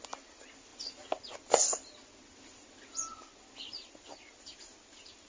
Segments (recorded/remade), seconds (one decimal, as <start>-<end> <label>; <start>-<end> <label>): 0.0-5.3 recorded

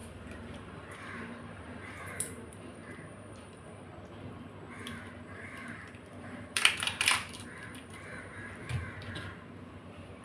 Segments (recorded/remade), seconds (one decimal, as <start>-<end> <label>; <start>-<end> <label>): 0.0-1.0 recorded; 1.0-2.8 remade; 2.8-3.3 recorded; 3.3-3.9 remade; 3.9-4.8 recorded; 4.8-10.2 remade

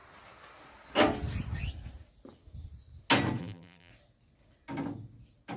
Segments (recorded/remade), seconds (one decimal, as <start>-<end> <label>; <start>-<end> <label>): 0.0-3.4 recorded; 3.4-3.9 remade; 3.9-5.6 recorded

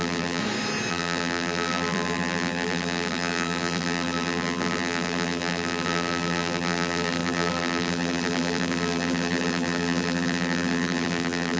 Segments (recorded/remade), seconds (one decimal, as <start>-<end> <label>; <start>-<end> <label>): 0.0-0.4 remade; 0.4-0.9 recorded; 0.9-11.6 remade

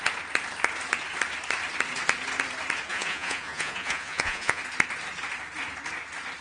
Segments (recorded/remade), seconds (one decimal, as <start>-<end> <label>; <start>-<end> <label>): 0.0-2.9 recorded; 2.9-4.6 remade; 4.6-6.4 recorded

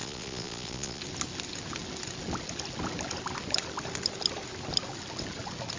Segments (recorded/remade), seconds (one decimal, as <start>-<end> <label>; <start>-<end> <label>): 0.0-1.0 remade; 1.0-5.8 recorded